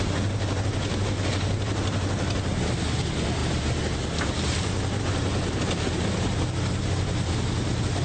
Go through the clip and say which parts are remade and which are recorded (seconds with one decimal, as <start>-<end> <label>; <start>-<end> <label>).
0.0-8.0 recorded